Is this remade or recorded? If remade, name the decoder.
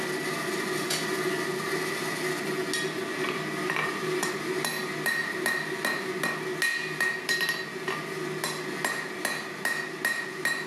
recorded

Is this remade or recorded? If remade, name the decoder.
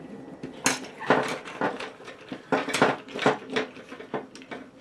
recorded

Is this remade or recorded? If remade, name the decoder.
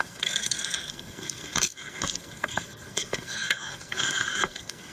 remade, codec, SNAC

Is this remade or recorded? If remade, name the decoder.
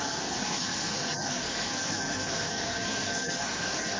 remade, codec, SNAC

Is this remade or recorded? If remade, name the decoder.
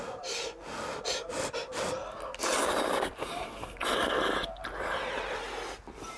recorded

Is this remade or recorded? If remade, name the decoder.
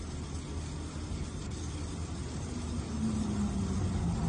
recorded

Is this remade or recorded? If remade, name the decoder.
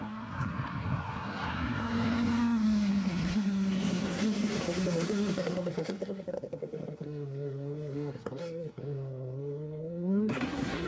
remade, codec, SNAC